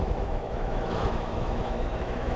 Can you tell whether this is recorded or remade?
remade